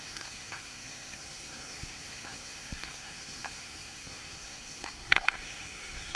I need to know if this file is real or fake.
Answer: fake